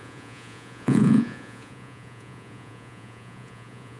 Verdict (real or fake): fake